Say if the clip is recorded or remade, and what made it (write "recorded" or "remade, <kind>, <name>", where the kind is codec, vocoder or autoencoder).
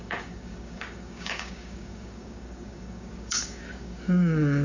remade, codec, DAC